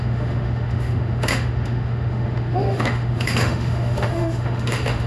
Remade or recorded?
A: remade